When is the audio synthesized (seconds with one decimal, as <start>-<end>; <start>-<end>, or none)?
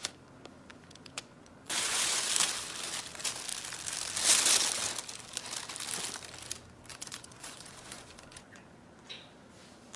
0.7-2.3; 6.9-9.1